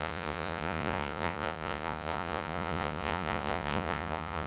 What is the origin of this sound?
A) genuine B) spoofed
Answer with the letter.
B